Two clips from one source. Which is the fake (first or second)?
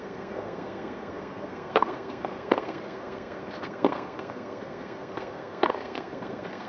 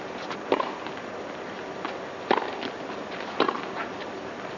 first